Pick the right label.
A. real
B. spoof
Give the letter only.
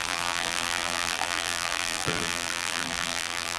B